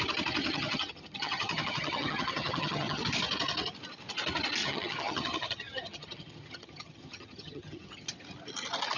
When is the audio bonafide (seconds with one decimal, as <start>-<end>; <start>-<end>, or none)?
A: 0.0-0.4; 3.0-4.6; 8.1-9.0

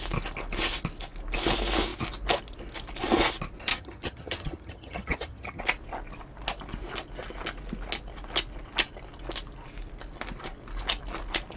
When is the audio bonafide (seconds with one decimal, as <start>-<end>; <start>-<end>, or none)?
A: 0.0-3.7; 5.6-11.6

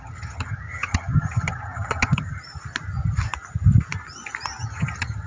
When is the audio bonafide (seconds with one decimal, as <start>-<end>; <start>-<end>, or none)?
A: 2.4-4.6

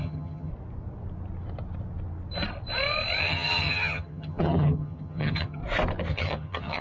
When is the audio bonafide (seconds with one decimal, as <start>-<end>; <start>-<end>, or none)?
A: 0.5-3.2; 5.6-6.1

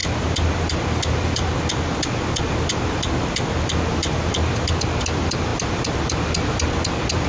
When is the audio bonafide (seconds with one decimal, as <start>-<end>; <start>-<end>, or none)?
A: 0.0-7.3